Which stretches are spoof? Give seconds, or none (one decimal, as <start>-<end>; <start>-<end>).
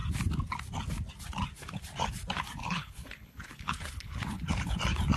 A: 2.6-4.8